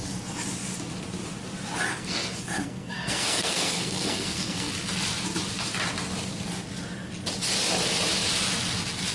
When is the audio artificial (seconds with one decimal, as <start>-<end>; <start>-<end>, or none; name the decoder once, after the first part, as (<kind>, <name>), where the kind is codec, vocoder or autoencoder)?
1.9-4.7 (codec, SNAC)